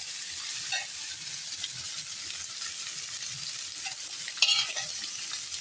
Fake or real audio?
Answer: real